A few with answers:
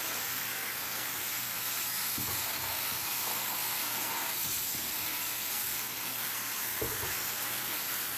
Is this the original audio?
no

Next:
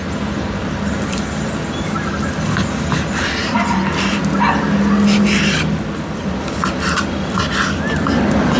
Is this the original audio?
yes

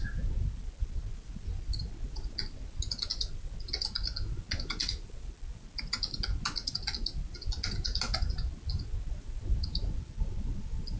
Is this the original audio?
yes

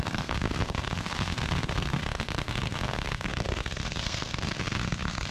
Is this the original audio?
no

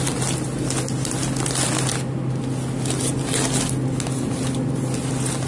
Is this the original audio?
yes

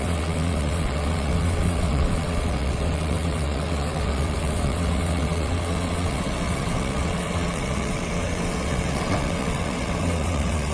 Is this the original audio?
no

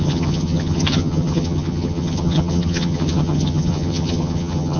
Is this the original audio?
no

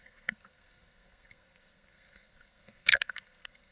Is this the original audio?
no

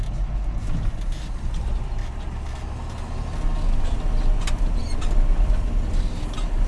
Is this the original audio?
yes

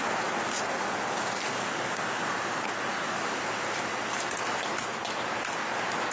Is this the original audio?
yes